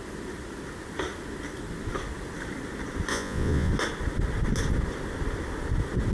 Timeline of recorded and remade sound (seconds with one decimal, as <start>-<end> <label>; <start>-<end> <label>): 0.0-3.1 recorded; 3.1-3.7 remade; 3.7-6.1 recorded